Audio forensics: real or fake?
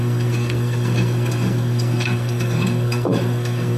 fake